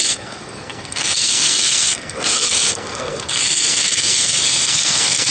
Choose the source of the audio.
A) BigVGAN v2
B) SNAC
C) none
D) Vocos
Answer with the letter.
B